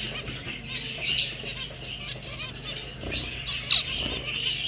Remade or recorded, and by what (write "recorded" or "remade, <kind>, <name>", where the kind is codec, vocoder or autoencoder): recorded